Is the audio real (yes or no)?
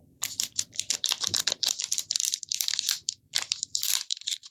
no